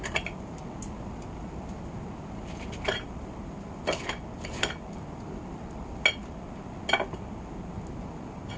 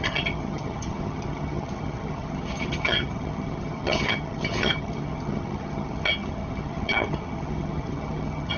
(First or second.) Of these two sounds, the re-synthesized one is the second